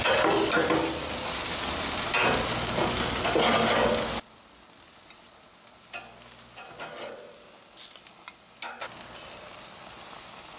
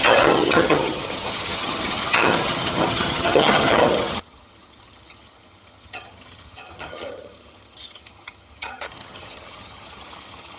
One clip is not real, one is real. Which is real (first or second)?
first